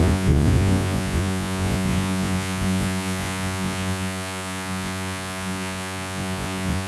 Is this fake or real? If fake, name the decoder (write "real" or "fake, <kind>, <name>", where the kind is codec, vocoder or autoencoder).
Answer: fake, vocoder, Vocos